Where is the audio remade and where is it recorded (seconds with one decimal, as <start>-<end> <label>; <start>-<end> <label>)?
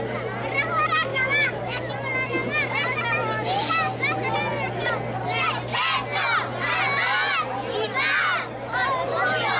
0.0-1.1 recorded; 1.1-1.9 remade; 1.9-9.6 recorded